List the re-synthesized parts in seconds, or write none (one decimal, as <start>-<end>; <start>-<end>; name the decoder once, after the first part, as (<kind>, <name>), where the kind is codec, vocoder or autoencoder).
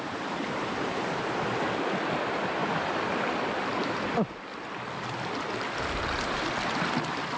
0.0-4.5 (vocoder, BigVGAN v2); 6.5-7.4